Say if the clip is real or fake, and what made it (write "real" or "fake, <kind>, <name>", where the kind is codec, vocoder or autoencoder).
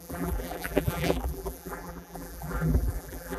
fake, vocoder, BigVGAN v2